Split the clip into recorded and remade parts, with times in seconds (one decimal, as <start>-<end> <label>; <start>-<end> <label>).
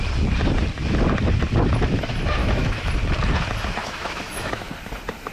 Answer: 0.0-2.4 recorded; 2.4-2.9 remade; 2.9-3.8 recorded; 3.8-4.7 remade; 4.7-5.3 recorded